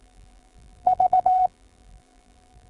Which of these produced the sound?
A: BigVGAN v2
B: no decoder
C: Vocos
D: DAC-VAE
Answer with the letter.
A